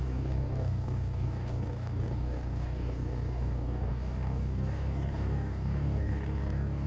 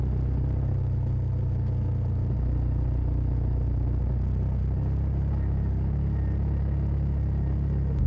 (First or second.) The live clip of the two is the second